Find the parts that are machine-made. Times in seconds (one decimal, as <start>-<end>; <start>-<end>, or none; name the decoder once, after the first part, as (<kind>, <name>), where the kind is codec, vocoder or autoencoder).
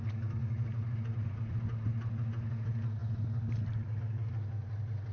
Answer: none